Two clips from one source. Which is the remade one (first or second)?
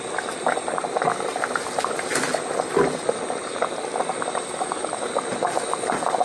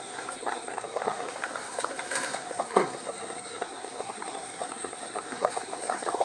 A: second